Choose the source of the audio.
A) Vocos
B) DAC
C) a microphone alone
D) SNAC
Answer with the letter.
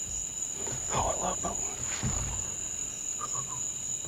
C